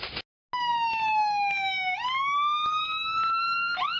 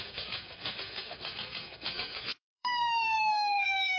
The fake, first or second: second